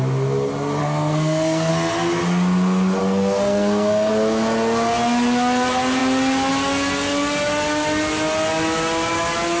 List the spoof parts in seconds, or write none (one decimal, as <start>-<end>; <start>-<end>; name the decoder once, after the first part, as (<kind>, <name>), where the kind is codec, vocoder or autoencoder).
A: 0.8-1.7 (codec, SNAC); 3.0-4.1